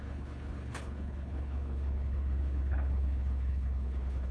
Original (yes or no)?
no